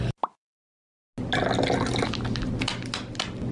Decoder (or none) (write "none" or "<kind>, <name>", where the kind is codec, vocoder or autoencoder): none